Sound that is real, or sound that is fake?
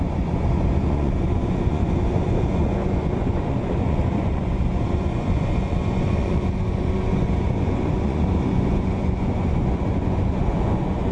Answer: fake